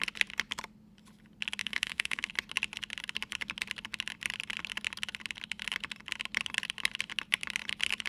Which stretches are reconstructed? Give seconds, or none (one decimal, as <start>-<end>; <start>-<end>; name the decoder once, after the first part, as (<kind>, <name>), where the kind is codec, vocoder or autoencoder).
1.6-2.3 (autoencoder, DAC-VAE)